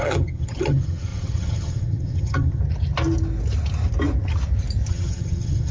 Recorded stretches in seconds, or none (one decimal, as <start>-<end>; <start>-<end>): 2.6-4.9